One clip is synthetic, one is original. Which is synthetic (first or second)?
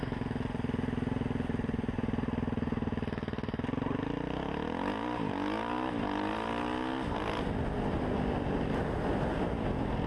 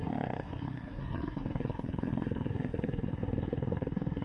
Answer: second